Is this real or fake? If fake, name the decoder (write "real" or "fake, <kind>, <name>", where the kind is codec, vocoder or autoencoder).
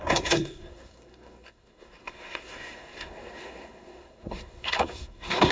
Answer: fake, codec, SNAC